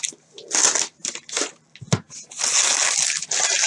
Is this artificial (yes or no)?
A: no